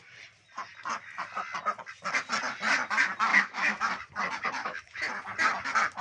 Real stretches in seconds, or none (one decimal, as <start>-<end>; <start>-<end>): 0.0-3.3; 3.9-4.6; 5.1-6.0